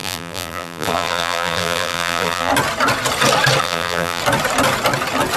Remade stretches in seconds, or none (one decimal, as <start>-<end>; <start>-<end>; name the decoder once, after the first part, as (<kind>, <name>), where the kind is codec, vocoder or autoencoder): 0.0-2.5 (vocoder, BigVGAN v2); 3.6-4.2